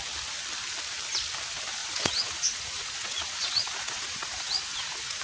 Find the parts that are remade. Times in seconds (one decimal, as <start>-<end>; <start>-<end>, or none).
1.8-5.2